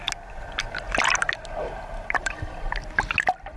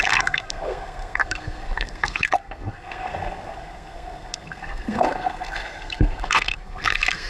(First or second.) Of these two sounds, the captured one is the first